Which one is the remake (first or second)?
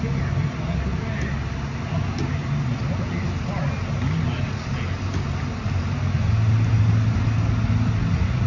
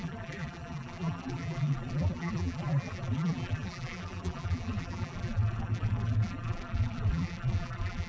second